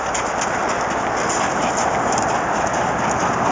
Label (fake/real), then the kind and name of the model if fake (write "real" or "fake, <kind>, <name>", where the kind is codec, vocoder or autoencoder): real